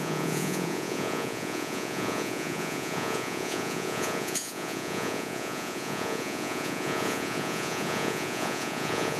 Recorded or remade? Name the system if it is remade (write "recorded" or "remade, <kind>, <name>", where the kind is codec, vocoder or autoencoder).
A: remade, vocoder, Vocos